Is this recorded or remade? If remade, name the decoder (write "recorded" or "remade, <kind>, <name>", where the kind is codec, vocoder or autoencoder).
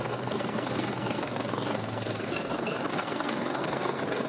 remade, codec, SNAC